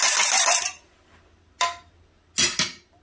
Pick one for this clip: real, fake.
real